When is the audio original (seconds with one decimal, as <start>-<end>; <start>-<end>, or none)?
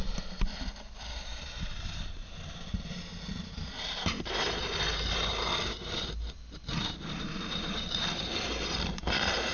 0.0-9.5